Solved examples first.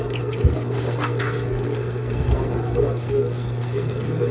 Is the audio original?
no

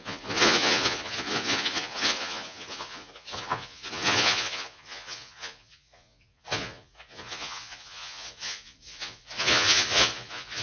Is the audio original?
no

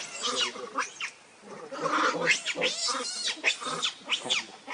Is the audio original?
yes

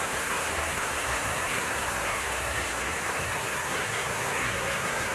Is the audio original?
no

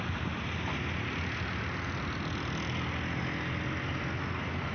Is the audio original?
yes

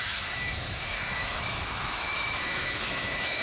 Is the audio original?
no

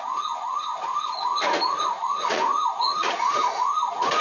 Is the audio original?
no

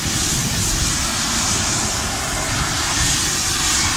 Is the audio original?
yes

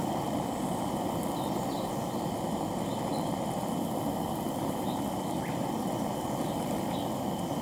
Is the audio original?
yes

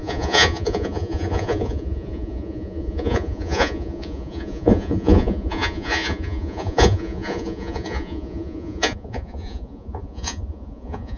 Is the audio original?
no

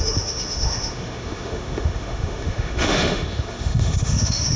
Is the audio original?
no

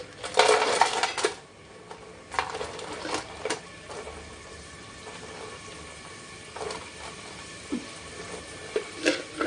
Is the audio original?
yes